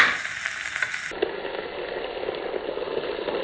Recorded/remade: recorded